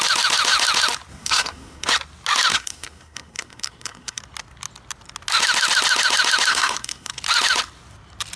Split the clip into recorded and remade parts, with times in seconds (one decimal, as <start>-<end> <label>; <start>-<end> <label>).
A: 0.0-1.1 recorded; 1.1-1.9 remade; 1.9-2.5 recorded; 2.5-4.2 remade; 4.2-6.5 recorded; 6.5-7.2 remade; 7.2-8.4 recorded